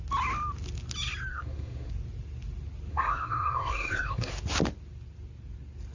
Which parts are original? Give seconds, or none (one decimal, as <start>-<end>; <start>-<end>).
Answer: 0.0-1.3; 1.9-2.9; 4.3-5.9